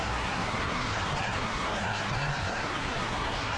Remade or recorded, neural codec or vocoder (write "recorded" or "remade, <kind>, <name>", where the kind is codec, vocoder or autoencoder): remade, codec, SNAC